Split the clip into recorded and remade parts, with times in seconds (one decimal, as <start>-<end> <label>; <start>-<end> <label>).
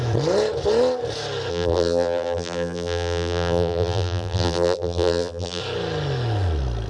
0.0-1.5 recorded; 1.5-5.6 remade; 5.6-6.9 recorded